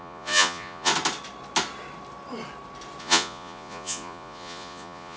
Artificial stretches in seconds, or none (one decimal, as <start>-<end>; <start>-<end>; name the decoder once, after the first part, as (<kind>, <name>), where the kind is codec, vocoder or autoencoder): 0.0-0.9 (vocoder, Vocos); 3.0-5.2

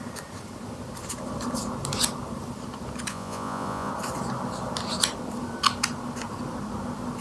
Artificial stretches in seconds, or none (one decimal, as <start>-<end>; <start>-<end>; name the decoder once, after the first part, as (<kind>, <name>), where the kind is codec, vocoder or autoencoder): 3.1-3.9 (vocoder, Vocos)

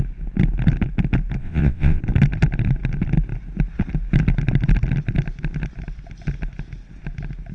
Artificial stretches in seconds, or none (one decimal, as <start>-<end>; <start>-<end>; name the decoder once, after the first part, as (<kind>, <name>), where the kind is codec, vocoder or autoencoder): 1.4-2.0 (vocoder, WaveNeXt)

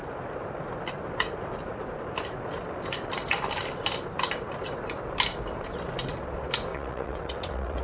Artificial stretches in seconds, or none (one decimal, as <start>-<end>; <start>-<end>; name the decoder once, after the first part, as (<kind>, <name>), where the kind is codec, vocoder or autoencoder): 6.7-7.8 (vocoder, WaveNeXt)

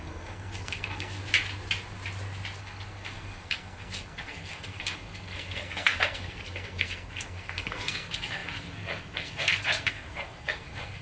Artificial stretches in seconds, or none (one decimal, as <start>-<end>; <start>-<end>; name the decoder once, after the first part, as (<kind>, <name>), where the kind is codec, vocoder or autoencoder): 0.0-1.2 (codec, SNAC); 2.6-11.0